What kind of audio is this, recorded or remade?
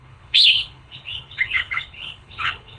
remade